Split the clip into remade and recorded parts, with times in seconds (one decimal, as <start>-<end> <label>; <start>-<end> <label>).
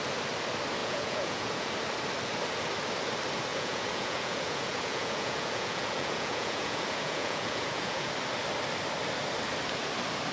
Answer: 0.0-0.8 recorded; 0.8-1.7 remade; 1.7-3.5 recorded; 3.5-8.1 remade; 8.1-10.3 recorded